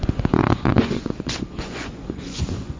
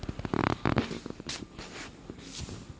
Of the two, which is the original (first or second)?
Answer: second